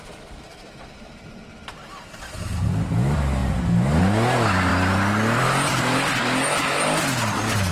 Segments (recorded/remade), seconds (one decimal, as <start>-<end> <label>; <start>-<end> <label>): 0.0-7.7 recorded